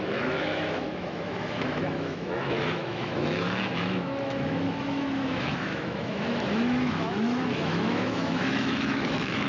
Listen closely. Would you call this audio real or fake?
fake